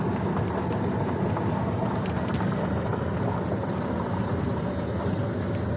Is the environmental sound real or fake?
real